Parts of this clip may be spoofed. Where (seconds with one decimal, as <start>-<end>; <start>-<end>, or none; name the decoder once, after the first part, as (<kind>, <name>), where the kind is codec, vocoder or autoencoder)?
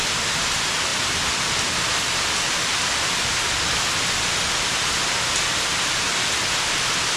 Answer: none